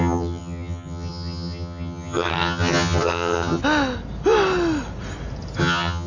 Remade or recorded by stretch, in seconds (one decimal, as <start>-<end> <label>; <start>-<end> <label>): 0.0-3.6 remade; 3.6-5.6 recorded; 5.6-6.1 remade